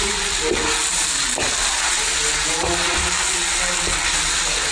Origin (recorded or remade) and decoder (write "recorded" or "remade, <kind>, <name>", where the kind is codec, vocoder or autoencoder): recorded